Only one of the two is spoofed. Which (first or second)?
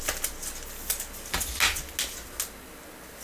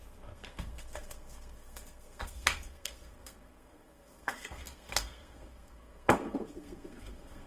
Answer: second